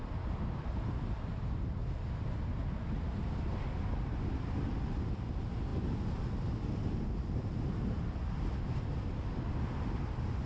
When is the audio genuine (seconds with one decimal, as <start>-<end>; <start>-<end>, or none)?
1.8-3.3; 5.7-7.6